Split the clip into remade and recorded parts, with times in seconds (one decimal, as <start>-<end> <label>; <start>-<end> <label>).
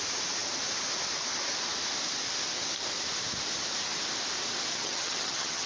0.0-4.7 recorded; 4.7-5.7 remade